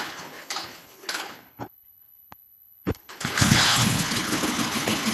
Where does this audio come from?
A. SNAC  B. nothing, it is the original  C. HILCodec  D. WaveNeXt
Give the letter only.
C